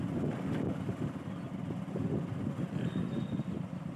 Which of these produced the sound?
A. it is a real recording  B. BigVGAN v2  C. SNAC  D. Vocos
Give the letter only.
A